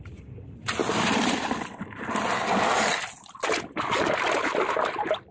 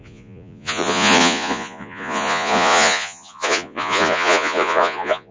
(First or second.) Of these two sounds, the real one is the first